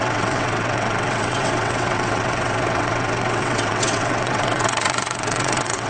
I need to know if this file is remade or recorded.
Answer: remade